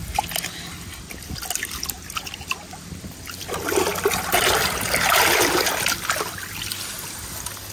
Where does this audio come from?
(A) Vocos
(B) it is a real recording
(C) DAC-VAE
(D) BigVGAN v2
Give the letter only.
B